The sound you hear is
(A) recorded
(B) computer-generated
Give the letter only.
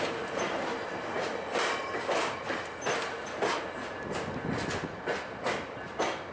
A